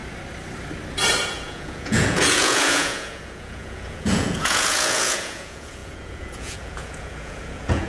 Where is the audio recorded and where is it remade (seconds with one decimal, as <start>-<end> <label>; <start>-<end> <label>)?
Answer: 0.0-1.3 recorded; 1.3-7.9 remade